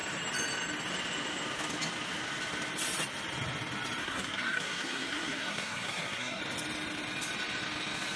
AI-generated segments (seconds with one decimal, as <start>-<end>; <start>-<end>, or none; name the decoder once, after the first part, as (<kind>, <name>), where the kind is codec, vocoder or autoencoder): 4.0-6.4 (codec, SNAC)